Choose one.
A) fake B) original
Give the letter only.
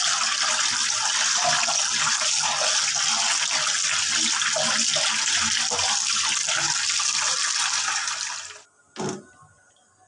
B